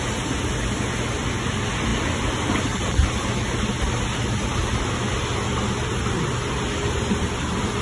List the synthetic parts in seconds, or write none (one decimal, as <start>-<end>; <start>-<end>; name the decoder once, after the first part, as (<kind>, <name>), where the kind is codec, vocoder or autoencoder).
none